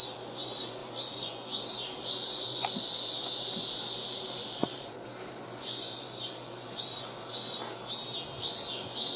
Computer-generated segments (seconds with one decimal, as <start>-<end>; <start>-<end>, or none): 0.0-7.6; 8.4-9.2